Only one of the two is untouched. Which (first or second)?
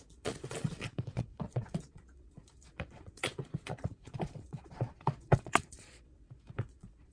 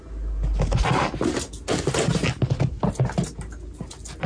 second